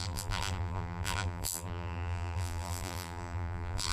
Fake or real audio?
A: fake